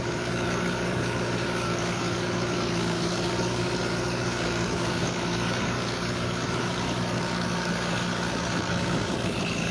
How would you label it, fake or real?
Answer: fake